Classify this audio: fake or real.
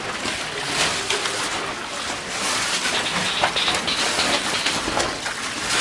real